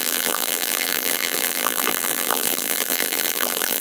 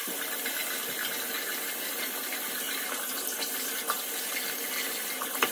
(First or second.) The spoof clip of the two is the first